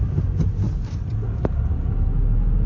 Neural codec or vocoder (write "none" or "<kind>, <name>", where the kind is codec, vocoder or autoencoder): none